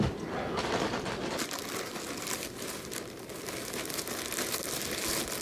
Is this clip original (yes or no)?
yes